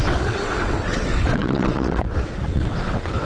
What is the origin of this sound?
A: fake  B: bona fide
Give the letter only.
A